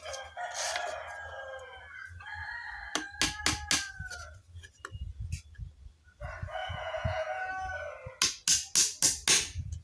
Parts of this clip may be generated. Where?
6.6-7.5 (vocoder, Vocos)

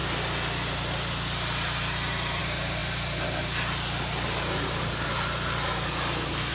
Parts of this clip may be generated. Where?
none

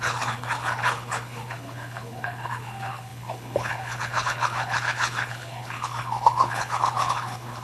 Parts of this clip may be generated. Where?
0.0-7.6 (codec, HILCodec)